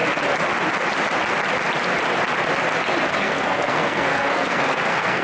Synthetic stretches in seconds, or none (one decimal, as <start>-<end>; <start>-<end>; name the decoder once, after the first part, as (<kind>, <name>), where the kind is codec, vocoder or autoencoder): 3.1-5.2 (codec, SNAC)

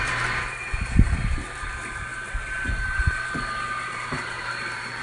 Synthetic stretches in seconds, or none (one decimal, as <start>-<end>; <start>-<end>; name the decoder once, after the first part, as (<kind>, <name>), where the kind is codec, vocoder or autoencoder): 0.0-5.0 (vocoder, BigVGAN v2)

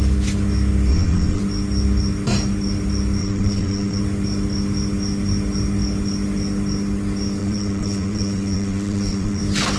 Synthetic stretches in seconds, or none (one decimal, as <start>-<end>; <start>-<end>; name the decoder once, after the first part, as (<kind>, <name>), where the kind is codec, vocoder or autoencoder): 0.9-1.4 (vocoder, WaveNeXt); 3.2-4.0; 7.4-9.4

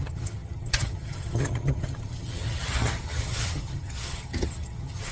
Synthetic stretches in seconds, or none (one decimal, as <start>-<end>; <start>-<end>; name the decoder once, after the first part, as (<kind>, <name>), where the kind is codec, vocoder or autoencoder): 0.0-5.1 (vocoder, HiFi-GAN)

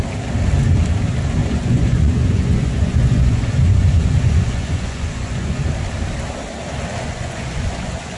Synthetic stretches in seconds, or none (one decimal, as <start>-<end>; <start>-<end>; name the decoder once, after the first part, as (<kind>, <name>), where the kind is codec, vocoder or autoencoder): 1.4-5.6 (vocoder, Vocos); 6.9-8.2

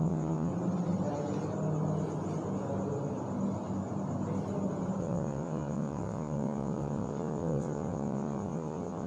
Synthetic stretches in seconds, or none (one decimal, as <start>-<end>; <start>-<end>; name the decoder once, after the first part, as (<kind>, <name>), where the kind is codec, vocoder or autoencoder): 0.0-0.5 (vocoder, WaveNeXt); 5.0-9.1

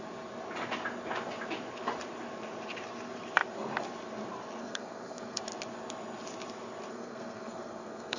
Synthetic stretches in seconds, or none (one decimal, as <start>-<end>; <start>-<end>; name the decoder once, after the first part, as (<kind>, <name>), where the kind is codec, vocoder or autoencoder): 4.6-5.4 (codec, SNAC); 6.9-8.2